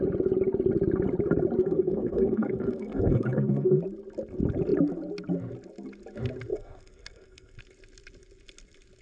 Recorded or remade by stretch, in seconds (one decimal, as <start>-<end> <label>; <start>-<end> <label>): 0.0-1.6 recorded; 1.6-3.8 remade; 3.8-6.5 recorded; 6.5-7.6 remade; 7.6-9.0 recorded

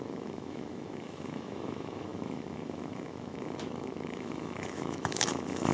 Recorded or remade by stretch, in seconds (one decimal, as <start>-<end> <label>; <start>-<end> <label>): 0.0-5.7 remade

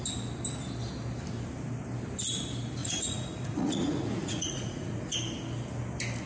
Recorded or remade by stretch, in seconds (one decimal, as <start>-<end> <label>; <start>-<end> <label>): 0.0-2.8 recorded; 2.8-5.0 remade; 5.0-6.3 recorded

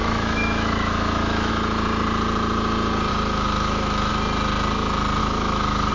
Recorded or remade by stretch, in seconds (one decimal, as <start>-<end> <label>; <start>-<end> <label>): 0.0-1.5 remade; 1.5-3.1 recorded; 3.1-4.1 remade; 4.1-5.2 recorded; 5.2-5.9 remade

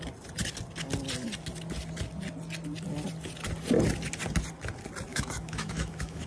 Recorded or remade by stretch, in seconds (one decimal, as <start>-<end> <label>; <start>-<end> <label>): 0.0-5.1 recorded; 5.1-6.3 remade

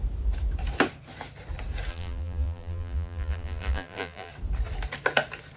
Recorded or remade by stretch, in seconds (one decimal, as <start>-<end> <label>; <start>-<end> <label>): 0.0-1.9 recorded; 1.9-4.3 remade; 4.3-5.6 recorded